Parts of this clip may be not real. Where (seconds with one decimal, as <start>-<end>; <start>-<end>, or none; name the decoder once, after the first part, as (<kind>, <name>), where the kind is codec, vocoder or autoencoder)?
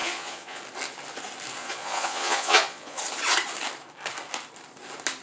0.0-0.6 (vocoder, Vocos); 1.6-3.0